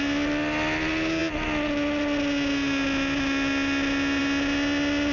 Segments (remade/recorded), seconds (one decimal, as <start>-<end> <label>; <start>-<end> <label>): 0.0-5.1 recorded